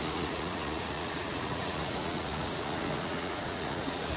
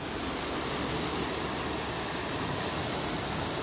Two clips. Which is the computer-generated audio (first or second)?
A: first